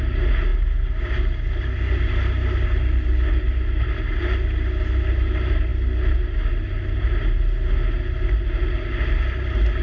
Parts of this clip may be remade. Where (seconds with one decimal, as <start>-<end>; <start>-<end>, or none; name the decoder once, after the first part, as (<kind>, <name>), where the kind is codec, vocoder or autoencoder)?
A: none